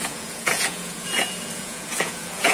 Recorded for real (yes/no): no